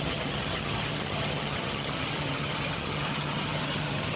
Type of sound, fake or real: fake